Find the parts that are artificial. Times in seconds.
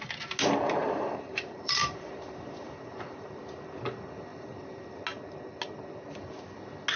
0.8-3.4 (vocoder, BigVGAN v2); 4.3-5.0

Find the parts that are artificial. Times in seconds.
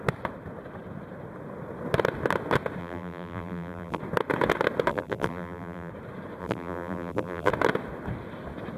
2.8-4.0 (vocoder, BigVGAN v2); 4.9-5.9; 6.4-7.5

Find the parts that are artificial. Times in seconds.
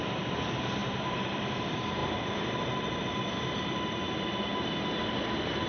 none